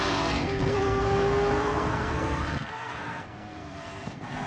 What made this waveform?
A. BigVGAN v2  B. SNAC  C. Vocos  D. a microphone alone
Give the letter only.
B